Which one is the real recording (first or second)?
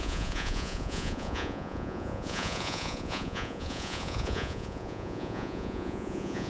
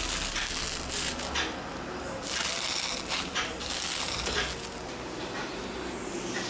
second